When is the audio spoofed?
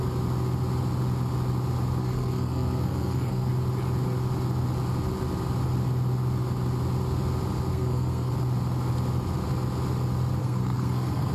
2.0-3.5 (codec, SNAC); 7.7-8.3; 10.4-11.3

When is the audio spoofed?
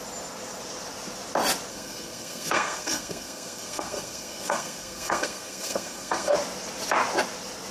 1.7-6.3 (codec, SNAC)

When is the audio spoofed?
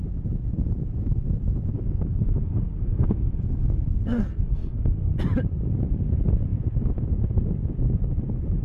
2.1-5.1 (codec, SNAC)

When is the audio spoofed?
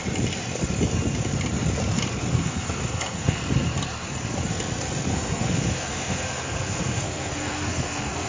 2.3-3.4 (codec, SNAC); 5.1-8.3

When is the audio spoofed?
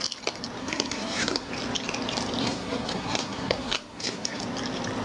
0.6-1.5 (codec, SNAC); 2.4-4.4